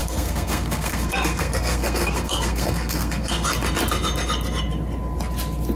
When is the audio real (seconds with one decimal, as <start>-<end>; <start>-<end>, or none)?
3.5-5.8